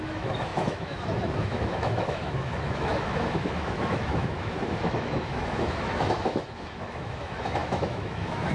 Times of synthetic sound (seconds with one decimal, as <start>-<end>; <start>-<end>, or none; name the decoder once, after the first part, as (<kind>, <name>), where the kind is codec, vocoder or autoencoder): 0.0-8.5 (autoencoder, DAC-VAE)